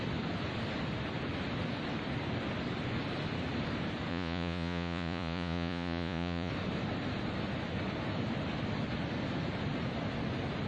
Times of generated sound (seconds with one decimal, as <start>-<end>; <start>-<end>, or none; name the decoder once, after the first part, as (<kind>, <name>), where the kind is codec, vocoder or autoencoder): 4.1-6.5 (vocoder, Vocos)